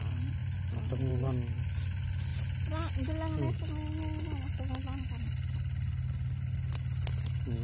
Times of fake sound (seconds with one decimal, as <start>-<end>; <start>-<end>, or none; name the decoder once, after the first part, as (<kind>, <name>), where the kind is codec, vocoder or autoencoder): none